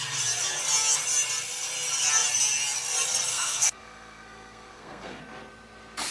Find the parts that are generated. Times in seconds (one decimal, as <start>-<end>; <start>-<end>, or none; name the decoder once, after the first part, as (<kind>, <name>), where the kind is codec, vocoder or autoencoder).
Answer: 3.3-5.2 (codec, SNAC)